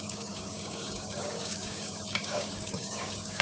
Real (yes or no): no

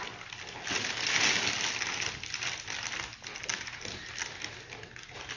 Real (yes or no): yes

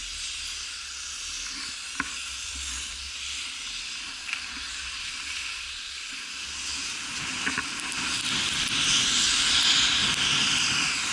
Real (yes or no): yes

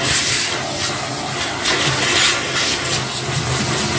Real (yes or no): yes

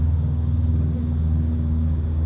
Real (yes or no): no